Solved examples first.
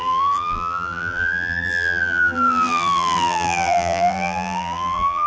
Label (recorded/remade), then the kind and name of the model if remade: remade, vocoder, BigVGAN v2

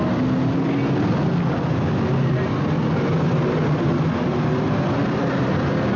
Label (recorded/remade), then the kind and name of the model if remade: recorded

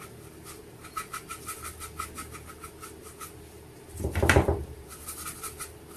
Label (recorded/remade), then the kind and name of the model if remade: recorded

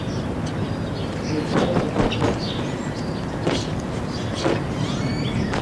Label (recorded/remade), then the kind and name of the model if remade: recorded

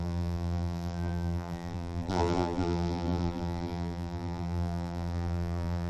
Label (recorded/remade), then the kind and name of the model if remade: remade, vocoder, BigVGAN v2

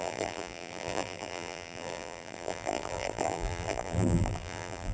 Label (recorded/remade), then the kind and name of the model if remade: remade, vocoder, BigVGAN v2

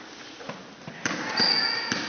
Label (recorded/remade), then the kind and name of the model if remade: recorded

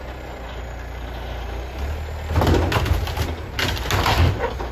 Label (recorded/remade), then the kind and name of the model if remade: recorded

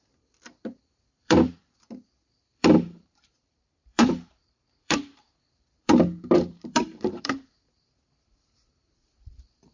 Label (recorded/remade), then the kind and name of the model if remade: remade, vocoder, BigVGAN v2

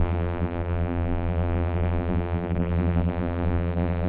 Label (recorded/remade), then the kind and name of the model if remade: remade, vocoder, BigVGAN v2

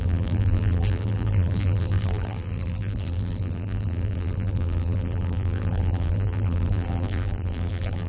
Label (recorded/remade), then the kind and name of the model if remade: remade, vocoder, BigVGAN v2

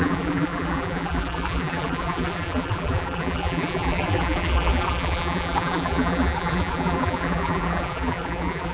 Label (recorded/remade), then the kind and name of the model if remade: remade, vocoder, BigVGAN v2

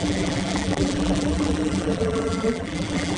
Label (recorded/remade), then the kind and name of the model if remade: remade, vocoder, BigVGAN v2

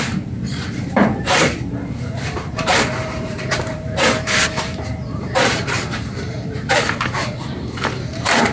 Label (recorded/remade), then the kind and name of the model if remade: remade, vocoder, BigVGAN v2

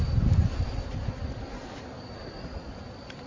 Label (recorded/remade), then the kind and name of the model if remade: recorded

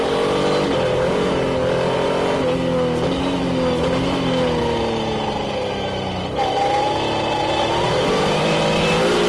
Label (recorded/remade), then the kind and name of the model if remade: recorded